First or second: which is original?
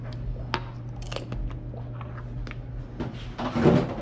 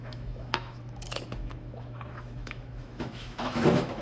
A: first